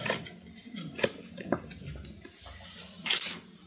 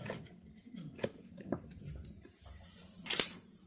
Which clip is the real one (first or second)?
first